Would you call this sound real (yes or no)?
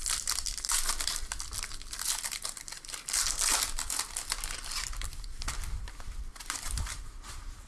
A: yes